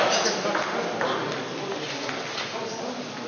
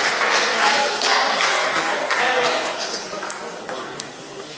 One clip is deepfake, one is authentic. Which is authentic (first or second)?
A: first